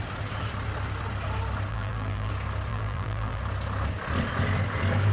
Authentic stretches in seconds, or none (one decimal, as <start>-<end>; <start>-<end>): 0.0-1.7; 2.3-2.7; 3.4-5.1